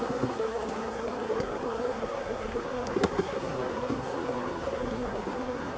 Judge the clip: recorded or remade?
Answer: remade